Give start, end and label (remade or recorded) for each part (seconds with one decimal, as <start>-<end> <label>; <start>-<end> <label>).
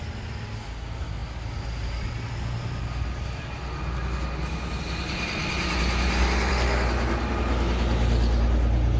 0.0-9.0 recorded